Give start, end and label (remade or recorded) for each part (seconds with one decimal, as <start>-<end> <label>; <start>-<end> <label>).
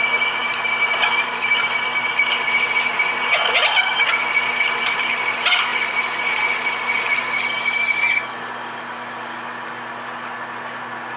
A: 0.0-11.2 recorded